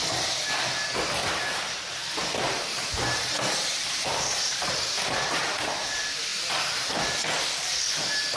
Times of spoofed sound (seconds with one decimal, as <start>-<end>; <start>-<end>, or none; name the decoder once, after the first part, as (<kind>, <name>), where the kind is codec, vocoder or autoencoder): 1.2-5.3 (vocoder, BigVGAN v2); 6.3-6.9